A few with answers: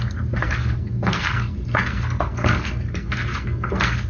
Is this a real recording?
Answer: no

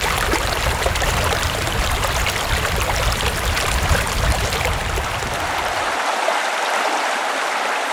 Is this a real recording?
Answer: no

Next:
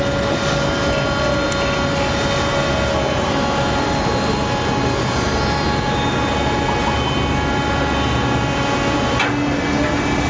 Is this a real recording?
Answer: yes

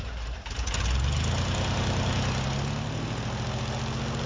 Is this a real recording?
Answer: yes